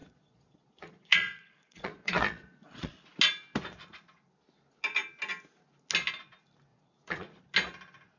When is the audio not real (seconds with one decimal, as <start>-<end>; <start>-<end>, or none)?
0.0-2.9; 6.7-7.4